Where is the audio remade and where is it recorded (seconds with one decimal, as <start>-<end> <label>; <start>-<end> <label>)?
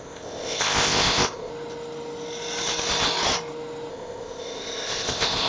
0.0-1.5 remade; 1.5-3.9 recorded; 3.9-5.5 remade